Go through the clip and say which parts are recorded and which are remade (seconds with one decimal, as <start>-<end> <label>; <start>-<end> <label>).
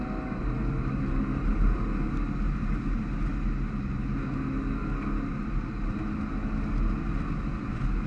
0.0-0.4 recorded; 0.4-1.8 remade; 1.8-8.1 recorded